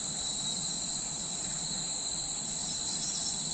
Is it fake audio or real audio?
real